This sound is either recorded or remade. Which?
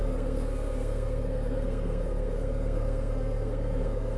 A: remade